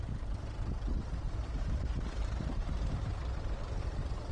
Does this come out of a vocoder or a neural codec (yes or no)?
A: no